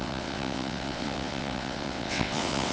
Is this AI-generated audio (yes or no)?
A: yes